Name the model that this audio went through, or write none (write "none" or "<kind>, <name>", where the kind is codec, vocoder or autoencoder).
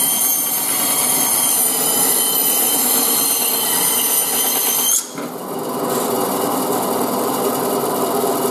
none